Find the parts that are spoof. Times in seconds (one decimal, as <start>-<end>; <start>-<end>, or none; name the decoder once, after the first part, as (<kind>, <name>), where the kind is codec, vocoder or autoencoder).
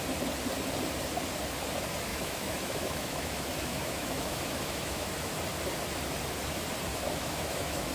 2.1-5.3 (autoencoder, DAC-VAE); 6.9-7.9